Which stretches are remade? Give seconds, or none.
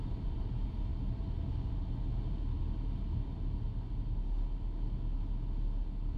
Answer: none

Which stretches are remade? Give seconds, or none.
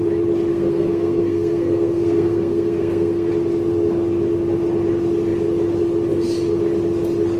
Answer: 0.5-3.3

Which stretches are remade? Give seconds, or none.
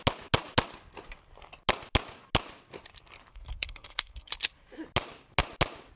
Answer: 3.3-4.3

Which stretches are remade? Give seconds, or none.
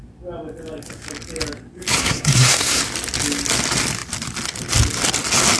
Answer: 1.9-2.8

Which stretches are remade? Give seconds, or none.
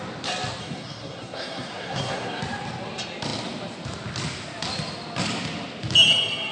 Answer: 0.6-2.4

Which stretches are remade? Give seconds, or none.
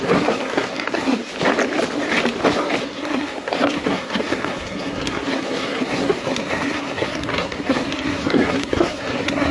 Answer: 0.0-1.2; 2.8-9.5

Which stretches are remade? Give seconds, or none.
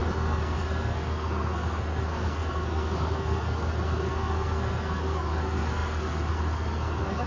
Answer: 0.0-7.3